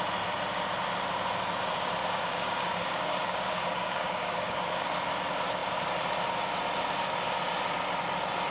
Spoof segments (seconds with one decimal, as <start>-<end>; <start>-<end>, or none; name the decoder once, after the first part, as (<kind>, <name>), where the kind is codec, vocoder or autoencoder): 2.0-4.9 (codec, DAC)